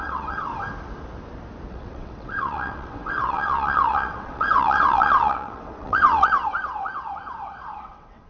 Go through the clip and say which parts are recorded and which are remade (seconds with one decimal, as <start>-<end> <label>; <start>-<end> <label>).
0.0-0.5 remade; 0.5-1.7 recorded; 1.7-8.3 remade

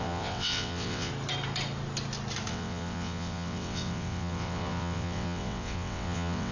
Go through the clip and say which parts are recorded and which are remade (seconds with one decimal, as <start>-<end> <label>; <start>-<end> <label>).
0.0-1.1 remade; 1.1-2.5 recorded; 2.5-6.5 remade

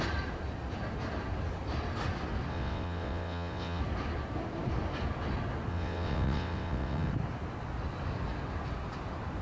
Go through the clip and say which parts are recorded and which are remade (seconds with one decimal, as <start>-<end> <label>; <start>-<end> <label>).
0.0-2.5 recorded; 2.5-3.8 remade; 3.8-5.7 recorded; 5.7-7.1 remade; 7.1-9.4 recorded

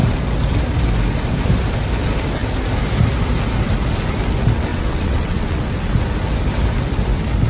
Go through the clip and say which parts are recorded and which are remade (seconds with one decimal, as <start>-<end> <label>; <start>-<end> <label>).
0.0-4.7 recorded; 4.7-5.6 remade; 5.6-7.5 recorded